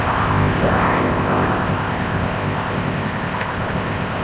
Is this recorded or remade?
remade